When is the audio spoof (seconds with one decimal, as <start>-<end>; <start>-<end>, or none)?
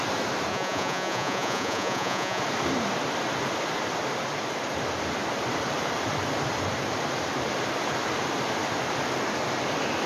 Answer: 0.5-2.4